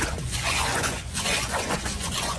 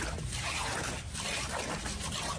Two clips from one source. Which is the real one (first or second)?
second